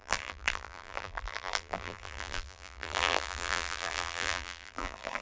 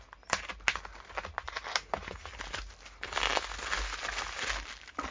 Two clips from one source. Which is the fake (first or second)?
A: first